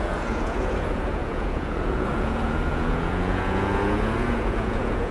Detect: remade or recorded remade